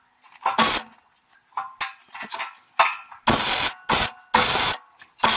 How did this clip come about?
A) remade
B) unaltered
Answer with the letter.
B